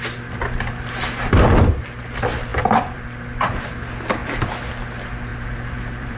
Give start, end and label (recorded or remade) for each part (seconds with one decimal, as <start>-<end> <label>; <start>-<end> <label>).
0.0-2.5 recorded; 2.5-3.2 remade; 3.2-4.2 recorded; 4.2-4.7 remade; 4.7-5.3 recorded; 5.3-6.2 remade